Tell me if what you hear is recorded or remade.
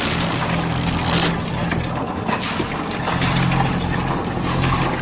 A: recorded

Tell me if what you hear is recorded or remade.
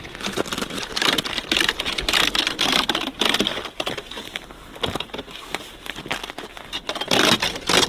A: recorded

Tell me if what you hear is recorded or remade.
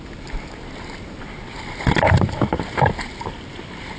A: recorded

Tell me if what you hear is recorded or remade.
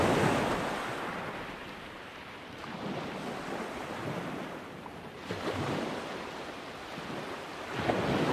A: recorded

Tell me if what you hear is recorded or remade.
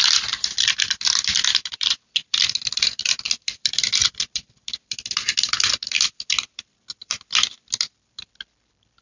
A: remade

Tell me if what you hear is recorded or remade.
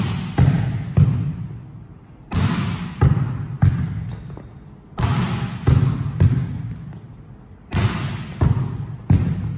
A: recorded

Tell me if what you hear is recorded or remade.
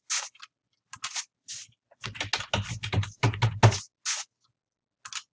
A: recorded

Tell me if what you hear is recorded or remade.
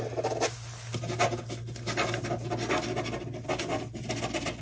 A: recorded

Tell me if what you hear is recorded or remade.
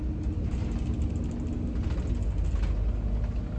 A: recorded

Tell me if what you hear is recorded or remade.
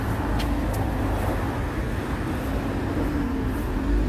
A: recorded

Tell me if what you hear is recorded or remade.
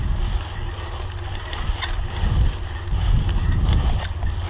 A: recorded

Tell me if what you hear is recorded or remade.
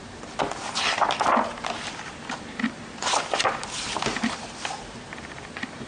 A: recorded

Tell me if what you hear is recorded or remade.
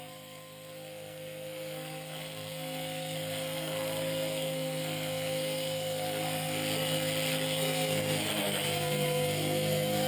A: remade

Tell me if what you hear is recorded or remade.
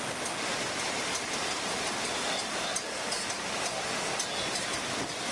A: recorded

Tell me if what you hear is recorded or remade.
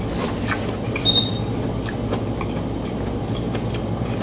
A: recorded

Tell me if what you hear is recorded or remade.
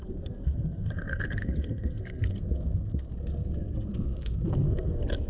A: remade